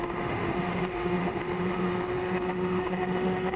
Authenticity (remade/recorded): remade